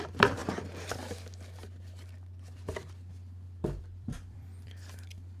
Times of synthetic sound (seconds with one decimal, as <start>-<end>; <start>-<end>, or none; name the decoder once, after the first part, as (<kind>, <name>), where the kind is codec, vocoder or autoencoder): 0.0-0.4 (vocoder, BigVGAN v2); 3.6-5.4